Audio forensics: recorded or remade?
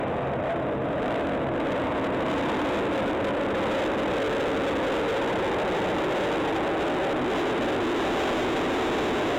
recorded